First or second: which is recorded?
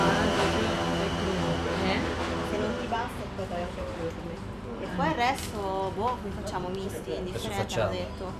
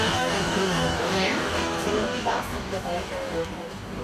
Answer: first